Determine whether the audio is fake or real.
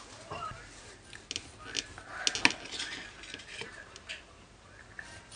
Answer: real